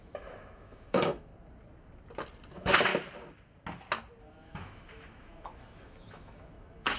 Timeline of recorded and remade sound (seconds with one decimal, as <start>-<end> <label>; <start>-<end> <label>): 0.0-1.3 remade; 1.3-2.5 recorded; 2.5-2.9 remade; 2.9-4.2 recorded; 4.2-7.0 remade